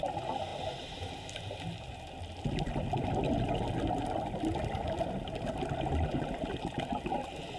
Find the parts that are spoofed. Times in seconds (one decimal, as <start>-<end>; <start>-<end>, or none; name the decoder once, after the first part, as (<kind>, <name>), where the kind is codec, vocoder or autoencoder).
none

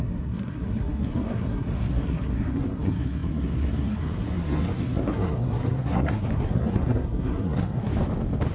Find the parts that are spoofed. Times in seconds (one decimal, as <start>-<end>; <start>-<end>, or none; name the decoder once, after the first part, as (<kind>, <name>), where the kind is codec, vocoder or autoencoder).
0.0-7.9 (codec, SNAC)

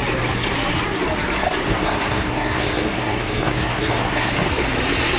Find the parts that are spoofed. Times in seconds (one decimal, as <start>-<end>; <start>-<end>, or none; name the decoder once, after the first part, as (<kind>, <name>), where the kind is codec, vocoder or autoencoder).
1.7-4.3 (codec, SNAC)